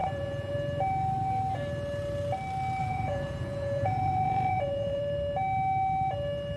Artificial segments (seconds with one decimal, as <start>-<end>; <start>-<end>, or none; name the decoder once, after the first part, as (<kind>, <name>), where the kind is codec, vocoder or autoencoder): 0.0-0.5 (vocoder, Vocos); 2.8-5.0

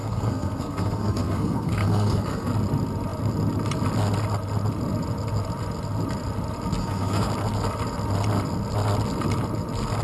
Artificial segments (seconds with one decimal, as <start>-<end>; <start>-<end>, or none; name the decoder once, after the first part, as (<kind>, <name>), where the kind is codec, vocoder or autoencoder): 0.0-2.5 (codec, SNAC); 6.8-7.3